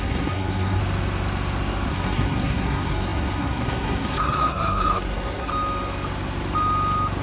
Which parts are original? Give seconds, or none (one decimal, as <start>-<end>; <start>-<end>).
0.8-1.9; 5.5-7.2